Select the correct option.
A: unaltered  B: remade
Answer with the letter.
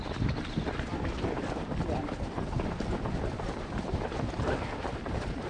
B